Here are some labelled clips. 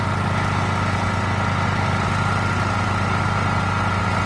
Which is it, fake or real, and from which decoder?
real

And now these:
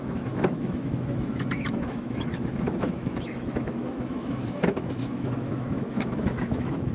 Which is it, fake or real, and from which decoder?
fake, autoencoder, DAC-VAE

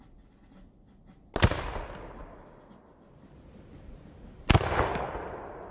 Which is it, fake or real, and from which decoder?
real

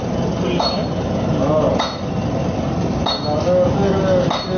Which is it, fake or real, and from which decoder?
real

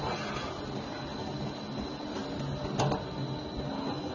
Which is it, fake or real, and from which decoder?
real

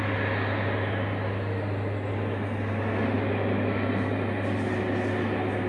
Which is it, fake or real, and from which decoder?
real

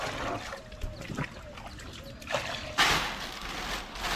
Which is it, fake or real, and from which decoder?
real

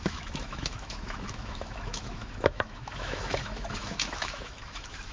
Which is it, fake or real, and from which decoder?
fake, autoencoder, DAC-VAE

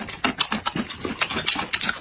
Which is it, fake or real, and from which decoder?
real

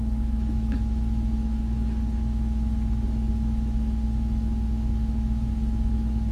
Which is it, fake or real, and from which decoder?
fake, autoencoder, DAC-VAE